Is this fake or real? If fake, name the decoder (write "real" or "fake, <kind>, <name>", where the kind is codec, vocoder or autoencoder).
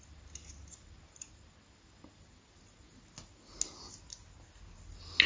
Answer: real